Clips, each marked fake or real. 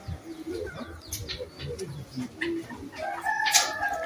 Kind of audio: real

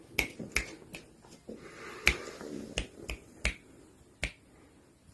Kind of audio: real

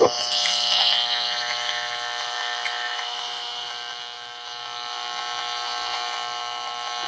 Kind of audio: fake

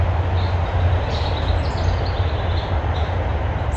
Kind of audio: real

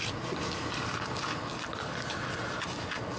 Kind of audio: real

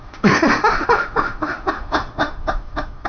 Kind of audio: fake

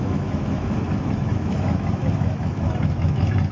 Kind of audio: fake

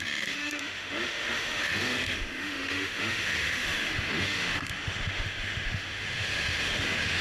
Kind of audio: fake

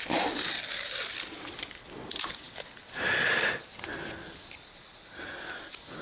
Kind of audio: real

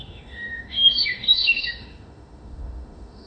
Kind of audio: fake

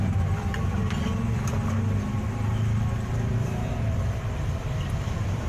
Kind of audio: real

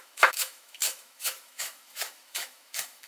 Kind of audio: fake